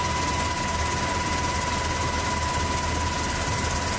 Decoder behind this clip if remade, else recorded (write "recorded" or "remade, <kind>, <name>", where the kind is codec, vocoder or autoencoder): recorded